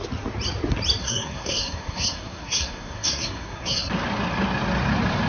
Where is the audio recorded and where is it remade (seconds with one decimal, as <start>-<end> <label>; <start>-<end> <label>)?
0.0-1.0 recorded; 1.0-3.9 remade; 3.9-5.3 recorded